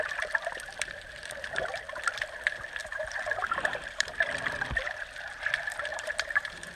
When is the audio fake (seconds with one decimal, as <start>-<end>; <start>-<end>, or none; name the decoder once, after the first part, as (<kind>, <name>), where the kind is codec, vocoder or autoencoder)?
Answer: 2.8-4.1 (vocoder, BigVGAN v2); 5.9-6.7

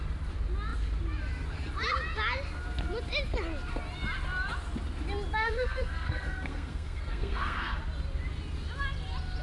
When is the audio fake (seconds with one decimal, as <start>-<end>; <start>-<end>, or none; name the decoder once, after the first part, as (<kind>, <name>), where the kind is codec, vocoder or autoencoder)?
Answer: 5.4-7.8 (codec, SNAC)

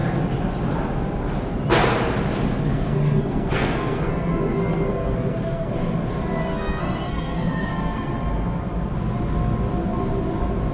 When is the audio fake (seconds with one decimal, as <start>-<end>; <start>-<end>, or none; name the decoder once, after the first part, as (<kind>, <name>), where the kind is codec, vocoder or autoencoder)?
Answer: 2.7-5.7 (codec, SNAC); 6.5-8.1

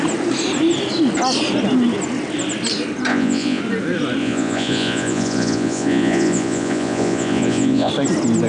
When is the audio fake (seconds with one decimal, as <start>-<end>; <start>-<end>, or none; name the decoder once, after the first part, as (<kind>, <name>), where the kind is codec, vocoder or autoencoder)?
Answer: 3.1-3.6 (vocoder, Vocos); 4.2-7.9

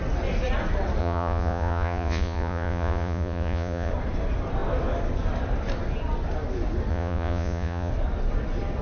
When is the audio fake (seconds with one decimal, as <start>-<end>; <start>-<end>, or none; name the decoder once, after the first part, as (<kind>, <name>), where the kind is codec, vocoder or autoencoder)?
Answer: 1.0-3.9 (vocoder, Vocos); 6.9-7.9

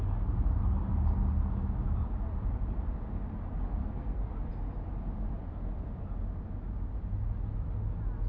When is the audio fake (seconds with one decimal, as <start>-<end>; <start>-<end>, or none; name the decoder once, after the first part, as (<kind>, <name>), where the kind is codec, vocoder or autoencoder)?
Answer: 3.8-4.3 (codec, SNAC)